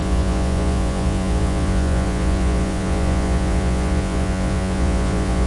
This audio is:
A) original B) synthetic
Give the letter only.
B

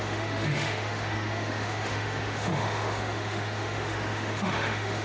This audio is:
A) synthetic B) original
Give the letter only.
A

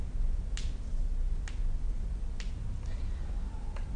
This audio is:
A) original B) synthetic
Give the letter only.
A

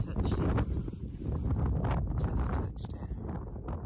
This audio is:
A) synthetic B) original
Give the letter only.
B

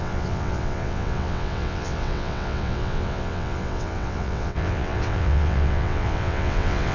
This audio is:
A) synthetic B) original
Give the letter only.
A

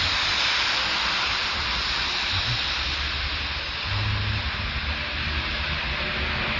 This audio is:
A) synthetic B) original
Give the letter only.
B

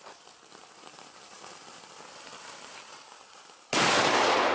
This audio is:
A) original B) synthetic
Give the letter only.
A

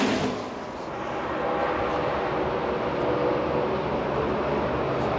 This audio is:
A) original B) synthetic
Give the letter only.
A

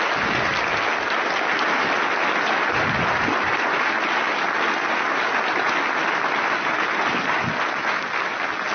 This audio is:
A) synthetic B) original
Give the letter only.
B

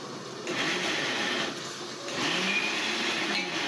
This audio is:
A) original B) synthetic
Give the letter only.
A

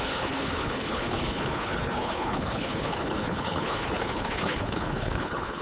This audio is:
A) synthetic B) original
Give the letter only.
A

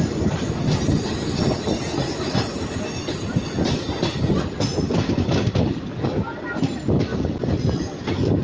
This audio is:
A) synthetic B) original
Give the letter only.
B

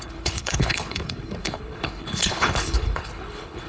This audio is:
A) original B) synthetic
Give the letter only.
B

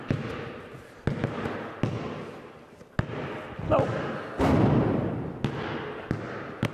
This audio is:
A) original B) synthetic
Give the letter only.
A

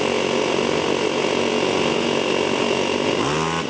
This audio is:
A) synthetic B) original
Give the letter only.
B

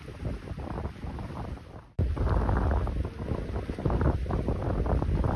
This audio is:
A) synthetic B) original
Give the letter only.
B